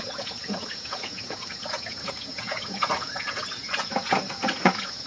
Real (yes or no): no